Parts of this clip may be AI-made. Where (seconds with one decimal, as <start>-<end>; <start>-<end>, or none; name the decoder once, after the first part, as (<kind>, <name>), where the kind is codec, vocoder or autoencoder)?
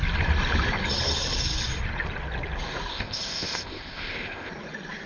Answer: 2.9-4.5 (codec, ZipCodec)